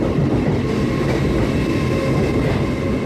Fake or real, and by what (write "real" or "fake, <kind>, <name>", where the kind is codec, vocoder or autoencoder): real